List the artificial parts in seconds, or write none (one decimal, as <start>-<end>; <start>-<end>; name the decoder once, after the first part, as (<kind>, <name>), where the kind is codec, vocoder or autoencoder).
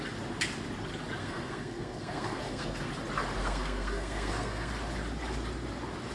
1.2-2.9 (codec, SNAC); 3.4-4.7